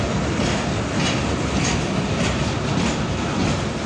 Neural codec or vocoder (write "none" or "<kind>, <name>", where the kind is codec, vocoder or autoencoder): none